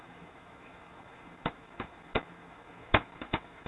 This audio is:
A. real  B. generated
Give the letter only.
B